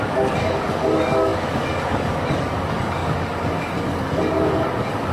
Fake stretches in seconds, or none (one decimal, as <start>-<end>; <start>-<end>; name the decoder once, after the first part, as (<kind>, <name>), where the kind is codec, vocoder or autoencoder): 0.0-5.1 (codec, DAC)